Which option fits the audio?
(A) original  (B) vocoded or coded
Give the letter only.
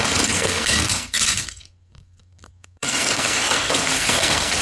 B